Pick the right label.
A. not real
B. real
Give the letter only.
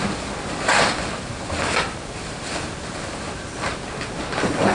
B